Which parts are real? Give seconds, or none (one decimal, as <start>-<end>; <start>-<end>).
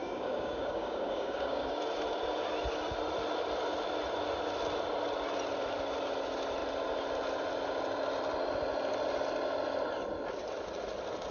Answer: 1.8-11.3